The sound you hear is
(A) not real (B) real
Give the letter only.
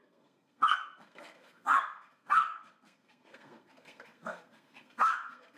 A